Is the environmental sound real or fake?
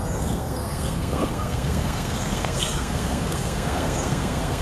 fake